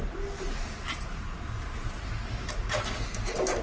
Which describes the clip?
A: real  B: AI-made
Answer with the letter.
A